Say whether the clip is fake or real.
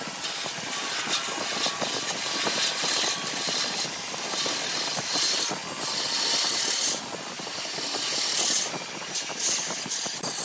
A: real